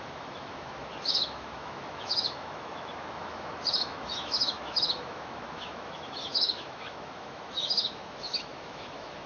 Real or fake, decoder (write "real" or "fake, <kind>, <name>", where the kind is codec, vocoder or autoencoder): fake, autoencoder, DAC-VAE